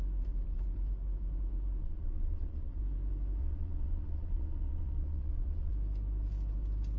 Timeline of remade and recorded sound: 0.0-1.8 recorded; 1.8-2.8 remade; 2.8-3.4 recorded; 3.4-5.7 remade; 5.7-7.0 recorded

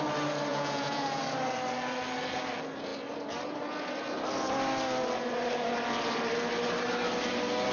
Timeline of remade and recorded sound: 0.0-0.5 recorded; 0.5-1.2 remade; 1.2-7.7 recorded

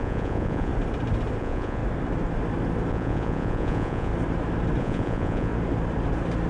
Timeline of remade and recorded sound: 0.0-0.7 remade; 0.7-1.4 recorded; 1.4-1.8 remade; 1.8-2.9 recorded; 2.9-4.1 remade; 4.1-4.8 recorded; 4.8-5.5 remade; 5.5-6.5 recorded

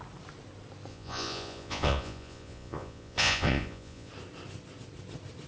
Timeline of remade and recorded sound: 0.0-0.9 recorded; 0.9-4.1 remade; 4.1-5.5 recorded

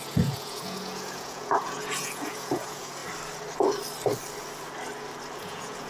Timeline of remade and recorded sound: 0.0-3.0 remade; 3.0-5.4 recorded; 5.4-5.9 remade

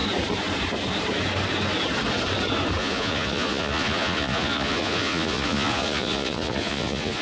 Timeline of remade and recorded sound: 0.0-2.8 recorded; 2.8-7.2 remade

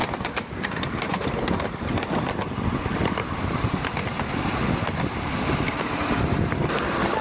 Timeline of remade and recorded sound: 0.0-7.2 recorded